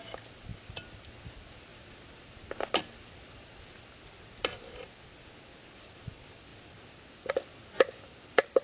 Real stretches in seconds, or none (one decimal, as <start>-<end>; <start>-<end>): 0.0-8.6